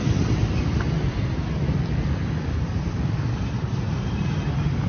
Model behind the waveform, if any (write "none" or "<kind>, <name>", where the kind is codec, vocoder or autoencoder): none